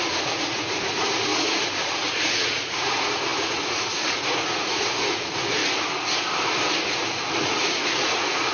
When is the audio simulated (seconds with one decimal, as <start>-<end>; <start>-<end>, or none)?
0.0-5.6; 7.3-8.5